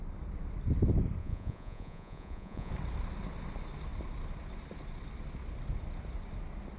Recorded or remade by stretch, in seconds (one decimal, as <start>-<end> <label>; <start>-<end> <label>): 0.0-1.2 recorded; 1.2-2.7 remade; 2.7-6.8 recorded